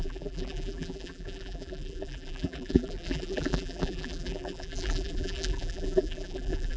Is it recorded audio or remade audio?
remade